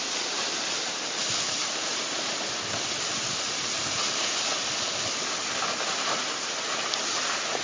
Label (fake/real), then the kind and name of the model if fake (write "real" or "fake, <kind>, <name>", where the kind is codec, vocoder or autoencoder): real